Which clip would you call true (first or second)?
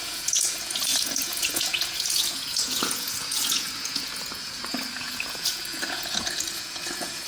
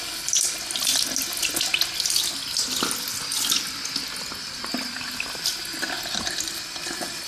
second